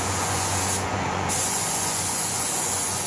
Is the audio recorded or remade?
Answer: remade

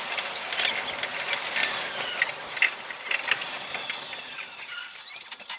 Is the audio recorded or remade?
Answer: recorded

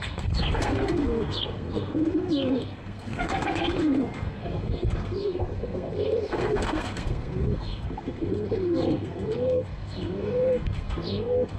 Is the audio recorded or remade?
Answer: remade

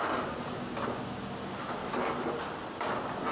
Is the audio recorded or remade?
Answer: recorded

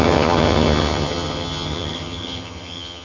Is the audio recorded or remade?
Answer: remade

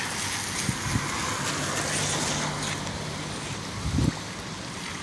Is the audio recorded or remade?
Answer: recorded